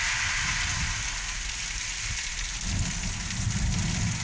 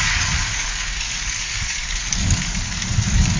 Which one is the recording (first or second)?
first